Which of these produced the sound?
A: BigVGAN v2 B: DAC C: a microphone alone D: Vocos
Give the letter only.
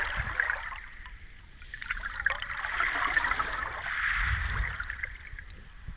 C